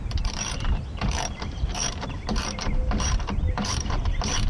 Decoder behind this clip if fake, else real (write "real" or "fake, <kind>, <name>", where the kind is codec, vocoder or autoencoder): fake, vocoder, BigVGAN v2